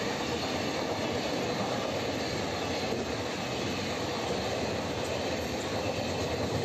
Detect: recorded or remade recorded